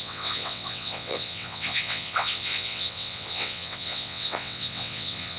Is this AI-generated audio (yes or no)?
yes